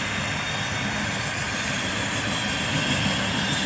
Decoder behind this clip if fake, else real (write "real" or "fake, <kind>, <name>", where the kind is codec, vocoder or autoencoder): real